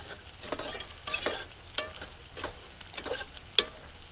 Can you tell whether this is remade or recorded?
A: recorded